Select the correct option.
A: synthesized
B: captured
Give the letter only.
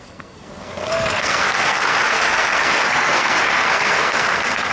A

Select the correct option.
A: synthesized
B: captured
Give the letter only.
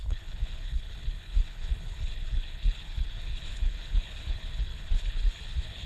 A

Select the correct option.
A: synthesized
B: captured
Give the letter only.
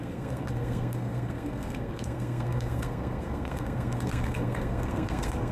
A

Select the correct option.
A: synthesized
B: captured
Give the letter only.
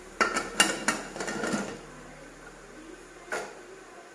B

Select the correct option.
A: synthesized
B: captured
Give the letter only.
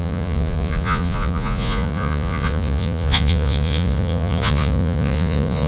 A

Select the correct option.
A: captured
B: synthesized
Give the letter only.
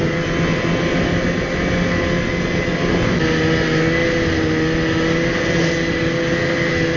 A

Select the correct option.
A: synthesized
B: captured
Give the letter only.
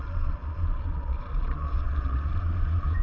A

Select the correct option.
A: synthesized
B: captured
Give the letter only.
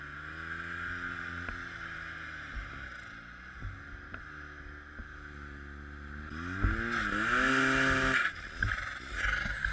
B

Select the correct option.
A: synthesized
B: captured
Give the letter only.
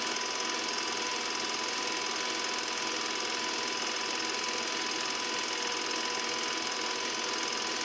B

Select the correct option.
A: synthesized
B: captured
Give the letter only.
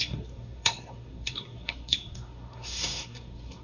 A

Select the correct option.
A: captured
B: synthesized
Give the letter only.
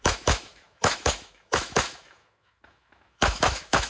B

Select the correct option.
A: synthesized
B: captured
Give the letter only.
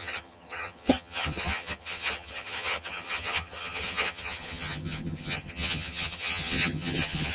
A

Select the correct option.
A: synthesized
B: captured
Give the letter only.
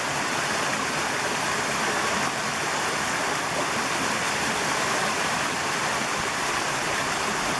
B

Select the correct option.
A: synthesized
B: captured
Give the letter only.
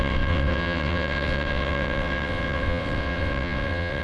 A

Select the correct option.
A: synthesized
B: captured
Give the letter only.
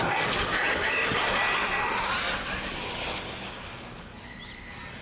B